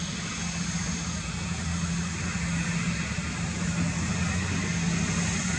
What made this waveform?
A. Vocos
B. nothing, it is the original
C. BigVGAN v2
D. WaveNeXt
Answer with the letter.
B